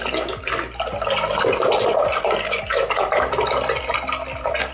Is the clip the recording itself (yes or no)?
yes